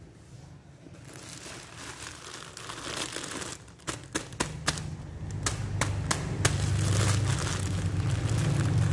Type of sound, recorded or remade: recorded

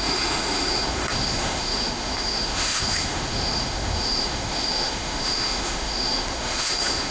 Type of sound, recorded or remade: remade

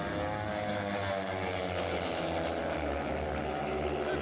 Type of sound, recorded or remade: recorded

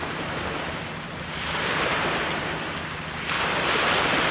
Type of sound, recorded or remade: recorded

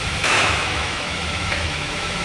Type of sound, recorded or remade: remade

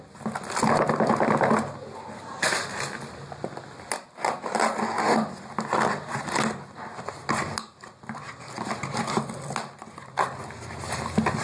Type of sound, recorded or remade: recorded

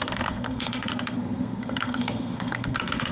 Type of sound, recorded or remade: remade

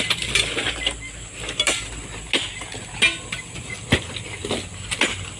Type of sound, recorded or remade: recorded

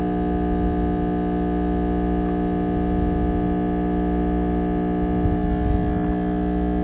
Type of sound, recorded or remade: recorded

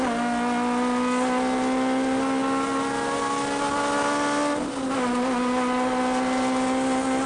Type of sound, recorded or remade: recorded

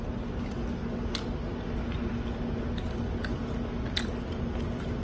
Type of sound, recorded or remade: recorded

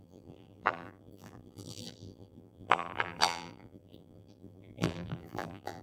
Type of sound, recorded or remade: remade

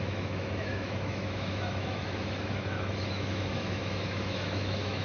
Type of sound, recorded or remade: remade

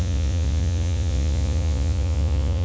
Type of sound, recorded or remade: remade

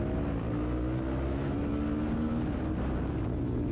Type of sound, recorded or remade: recorded